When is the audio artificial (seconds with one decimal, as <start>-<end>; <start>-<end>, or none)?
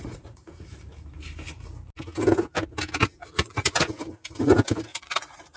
0.0-0.7; 3.2-3.7; 4.9-5.6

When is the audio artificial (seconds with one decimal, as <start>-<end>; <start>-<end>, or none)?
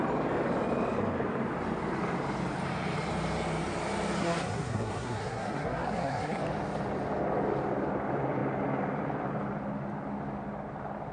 4.2-6.4